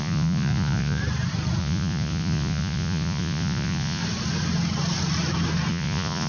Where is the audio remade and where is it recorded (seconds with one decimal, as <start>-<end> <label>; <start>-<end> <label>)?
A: 0.0-1.0 remade; 1.0-1.6 recorded; 1.6-4.0 remade; 4.0-5.7 recorded; 5.7-6.3 remade